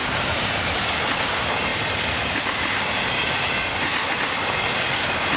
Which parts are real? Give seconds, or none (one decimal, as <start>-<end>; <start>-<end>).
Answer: 0.9-1.7; 3.4-5.4